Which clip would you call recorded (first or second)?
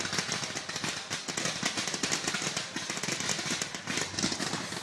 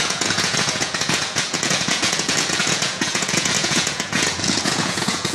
first